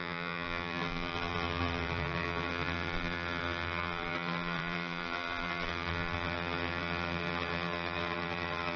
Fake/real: fake